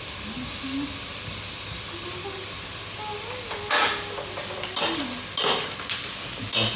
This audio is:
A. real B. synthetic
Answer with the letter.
A